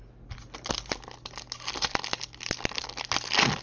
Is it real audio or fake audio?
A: real